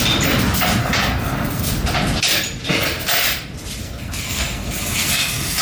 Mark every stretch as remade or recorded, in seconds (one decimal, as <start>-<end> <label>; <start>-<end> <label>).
0.0-0.8 recorded; 0.8-1.7 remade; 1.7-3.8 recorded; 3.8-5.6 remade